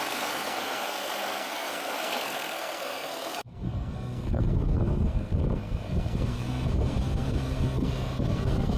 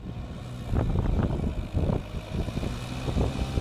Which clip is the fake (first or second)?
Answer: first